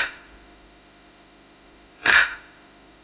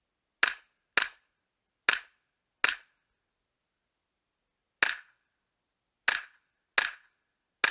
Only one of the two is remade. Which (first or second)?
first